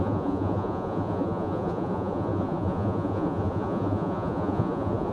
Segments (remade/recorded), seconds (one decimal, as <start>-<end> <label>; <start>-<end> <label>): 0.0-5.1 remade